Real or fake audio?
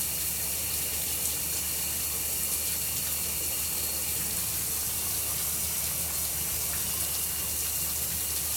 real